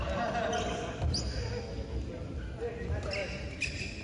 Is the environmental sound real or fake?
real